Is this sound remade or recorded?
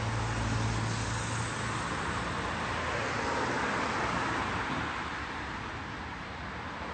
recorded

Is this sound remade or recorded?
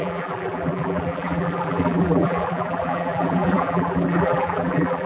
remade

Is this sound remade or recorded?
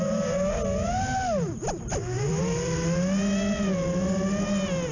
recorded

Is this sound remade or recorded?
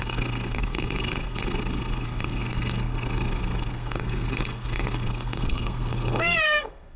remade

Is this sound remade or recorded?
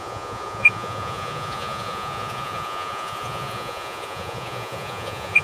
remade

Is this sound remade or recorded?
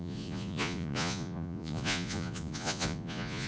remade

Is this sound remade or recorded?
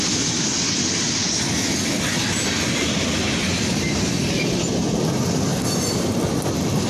recorded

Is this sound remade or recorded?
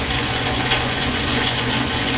remade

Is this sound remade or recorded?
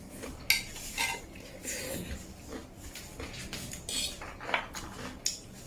recorded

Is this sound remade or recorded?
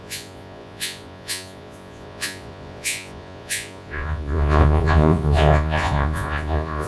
remade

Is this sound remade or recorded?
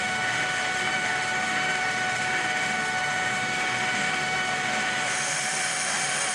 remade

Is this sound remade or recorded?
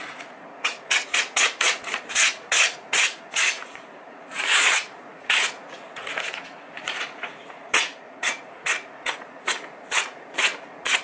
remade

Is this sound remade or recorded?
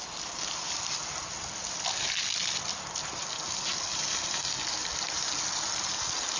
recorded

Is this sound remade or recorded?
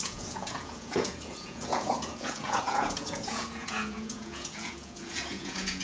remade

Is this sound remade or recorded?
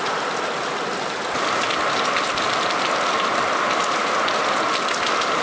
recorded